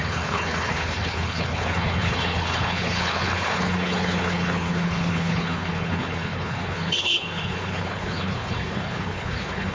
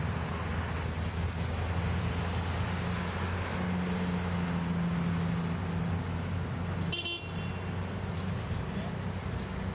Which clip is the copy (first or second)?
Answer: first